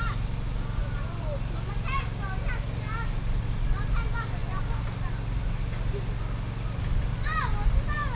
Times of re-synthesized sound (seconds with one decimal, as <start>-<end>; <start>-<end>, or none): 0.8-2.2